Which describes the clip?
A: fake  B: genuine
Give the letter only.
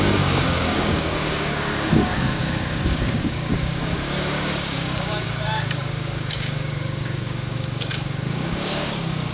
A